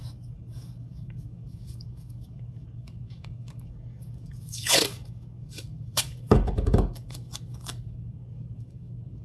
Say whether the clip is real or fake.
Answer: fake